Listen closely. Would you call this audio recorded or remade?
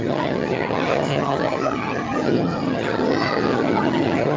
remade